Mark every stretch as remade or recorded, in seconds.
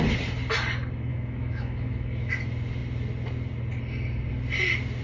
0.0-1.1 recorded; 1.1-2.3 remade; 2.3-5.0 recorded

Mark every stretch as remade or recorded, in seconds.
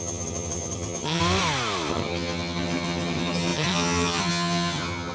0.0-1.2 remade; 1.2-1.9 recorded; 1.9-5.1 remade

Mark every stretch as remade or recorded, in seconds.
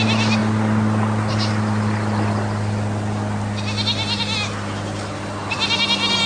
0.0-6.3 recorded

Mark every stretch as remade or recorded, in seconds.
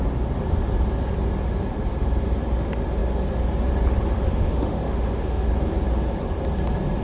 0.0-4.3 recorded; 4.3-5.5 remade; 5.5-7.0 recorded